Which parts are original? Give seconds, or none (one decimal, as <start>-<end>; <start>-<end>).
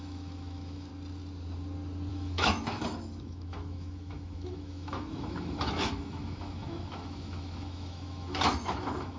0.9-2.1